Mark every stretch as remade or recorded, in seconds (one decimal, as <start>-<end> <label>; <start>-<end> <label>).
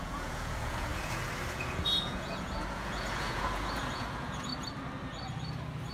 0.0-4.5 remade; 4.5-5.9 recorded